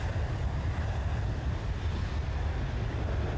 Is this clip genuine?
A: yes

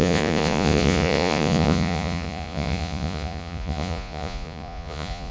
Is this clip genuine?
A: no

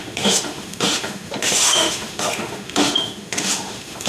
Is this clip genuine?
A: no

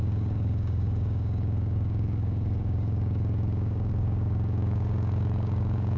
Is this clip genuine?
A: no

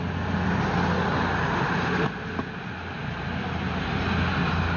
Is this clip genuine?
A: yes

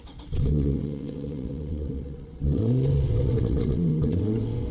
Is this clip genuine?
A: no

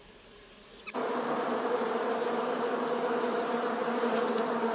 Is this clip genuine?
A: yes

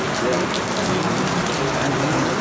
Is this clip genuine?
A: yes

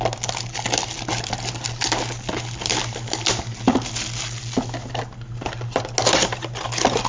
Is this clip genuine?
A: yes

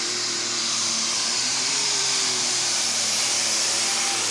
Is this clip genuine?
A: no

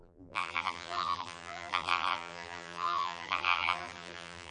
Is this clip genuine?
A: no